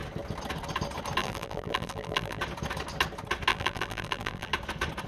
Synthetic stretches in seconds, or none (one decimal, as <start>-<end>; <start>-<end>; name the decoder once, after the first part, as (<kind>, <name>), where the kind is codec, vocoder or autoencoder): 1.2-2.4 (vocoder, BigVGAN v2); 3.5-4.5